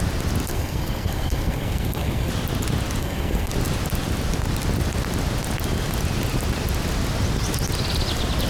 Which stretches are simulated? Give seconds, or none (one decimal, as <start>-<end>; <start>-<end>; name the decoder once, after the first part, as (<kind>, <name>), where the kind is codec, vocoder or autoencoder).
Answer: 0.5-2.3 (codec, SNAC); 3.0-3.5